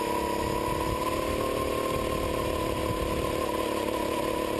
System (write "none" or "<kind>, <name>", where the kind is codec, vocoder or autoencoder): none